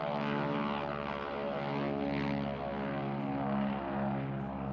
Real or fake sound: real